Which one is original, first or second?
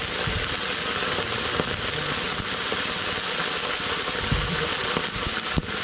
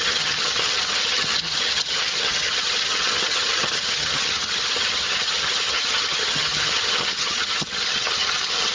first